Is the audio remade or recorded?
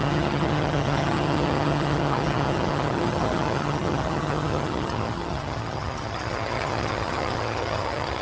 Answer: remade